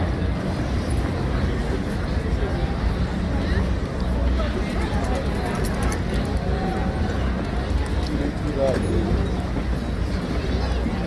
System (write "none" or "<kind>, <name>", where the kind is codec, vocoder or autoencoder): none